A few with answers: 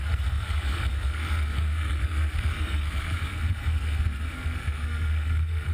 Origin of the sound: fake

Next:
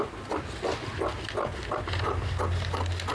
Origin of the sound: real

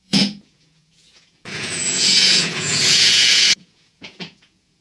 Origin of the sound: fake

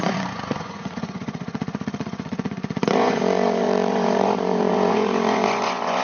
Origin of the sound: fake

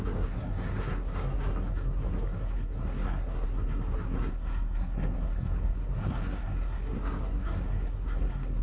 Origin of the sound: fake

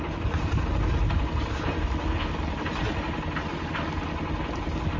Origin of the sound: real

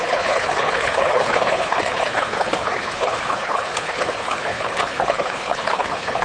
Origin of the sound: fake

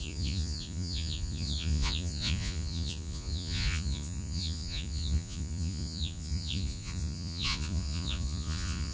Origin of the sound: fake